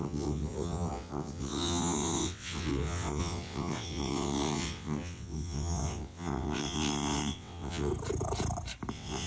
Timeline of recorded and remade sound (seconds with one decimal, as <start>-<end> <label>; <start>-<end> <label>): 0.0-7.9 remade; 7.9-8.9 recorded; 8.9-9.3 remade